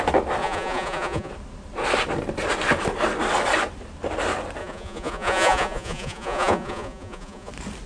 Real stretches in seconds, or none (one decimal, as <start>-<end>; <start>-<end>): 0.0-0.4; 1.3-4.6; 7.5-7.9